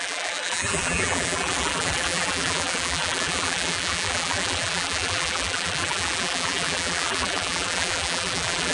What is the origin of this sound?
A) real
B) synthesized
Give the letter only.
B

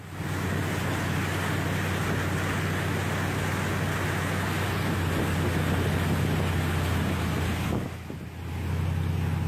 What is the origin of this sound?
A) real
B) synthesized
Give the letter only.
A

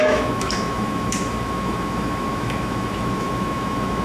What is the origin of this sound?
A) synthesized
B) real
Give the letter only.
A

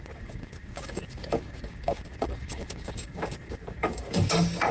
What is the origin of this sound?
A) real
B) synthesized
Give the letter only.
B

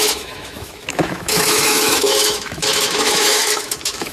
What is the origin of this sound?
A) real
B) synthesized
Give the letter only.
B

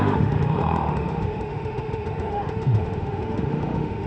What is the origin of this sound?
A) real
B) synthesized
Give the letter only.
B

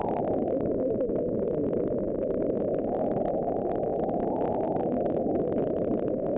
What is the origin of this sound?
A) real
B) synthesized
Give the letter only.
A